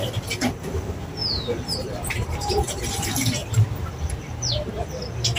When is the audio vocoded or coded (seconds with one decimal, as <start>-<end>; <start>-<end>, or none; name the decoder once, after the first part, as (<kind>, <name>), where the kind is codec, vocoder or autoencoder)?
1.2-2.8 (vocoder, BigVGAN v2); 3.4-4.5

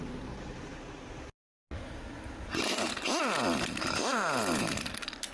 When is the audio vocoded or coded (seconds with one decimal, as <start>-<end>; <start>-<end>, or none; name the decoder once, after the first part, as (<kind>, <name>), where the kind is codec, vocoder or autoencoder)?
none

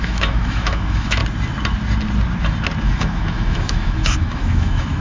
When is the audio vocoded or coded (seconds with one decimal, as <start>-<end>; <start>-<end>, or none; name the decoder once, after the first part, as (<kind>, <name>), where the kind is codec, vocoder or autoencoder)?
0.0-1.2 (autoencoder, DAC-VAE); 2.8-5.0

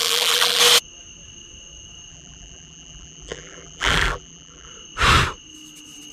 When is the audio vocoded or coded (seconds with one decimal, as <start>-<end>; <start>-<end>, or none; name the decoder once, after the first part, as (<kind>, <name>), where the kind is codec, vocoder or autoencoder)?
0.0-0.6 (vocoder, BigVGAN v2); 2.1-4.7

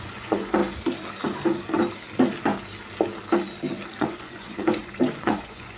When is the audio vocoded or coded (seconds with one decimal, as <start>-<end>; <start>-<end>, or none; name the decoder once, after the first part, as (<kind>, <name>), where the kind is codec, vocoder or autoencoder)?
0.0-0.6 (vocoder, Vocos); 4.0-5.8

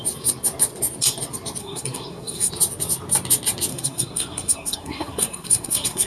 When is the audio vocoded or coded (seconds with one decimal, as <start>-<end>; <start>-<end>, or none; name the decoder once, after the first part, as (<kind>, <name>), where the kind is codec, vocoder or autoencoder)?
1.6-2.5 (codec, SNAC); 3.7-6.1